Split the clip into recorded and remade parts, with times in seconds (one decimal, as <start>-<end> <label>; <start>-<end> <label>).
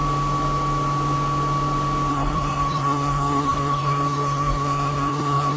0.0-2.1 recorded; 2.1-5.6 remade